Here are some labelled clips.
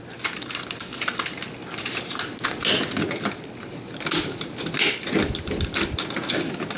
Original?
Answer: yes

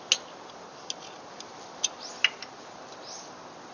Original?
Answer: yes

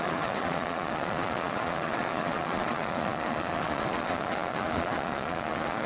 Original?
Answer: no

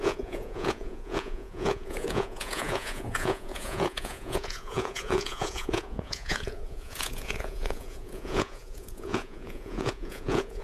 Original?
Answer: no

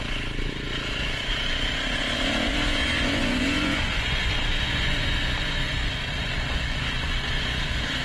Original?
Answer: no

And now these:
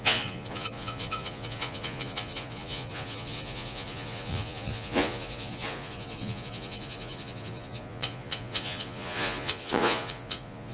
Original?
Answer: no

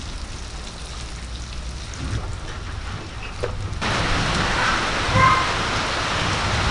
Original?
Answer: yes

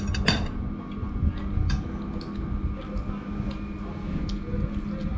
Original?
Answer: yes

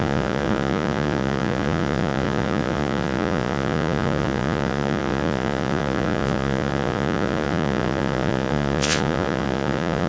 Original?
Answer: no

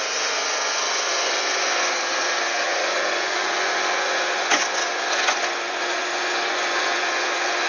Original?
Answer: no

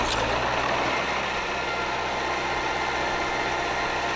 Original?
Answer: yes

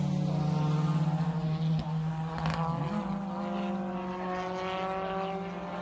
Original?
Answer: yes